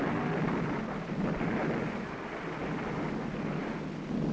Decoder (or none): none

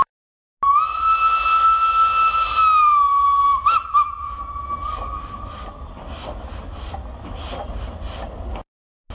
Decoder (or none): none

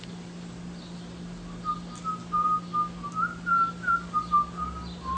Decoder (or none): none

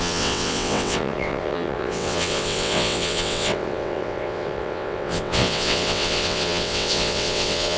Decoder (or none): vocoder, WaveNeXt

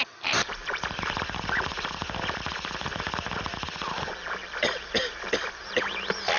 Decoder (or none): none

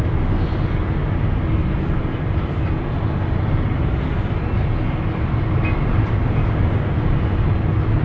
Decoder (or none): none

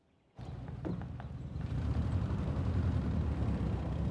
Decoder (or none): none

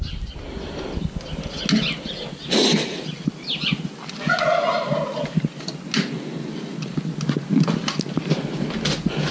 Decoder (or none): none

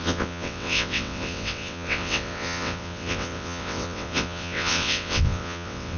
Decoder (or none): vocoder, WaveNeXt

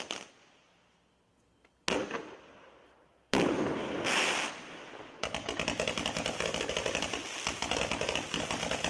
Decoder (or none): none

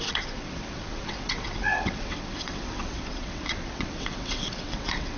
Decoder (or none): vocoder, WaveNeXt